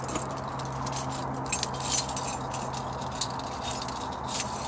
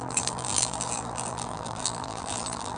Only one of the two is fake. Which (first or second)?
second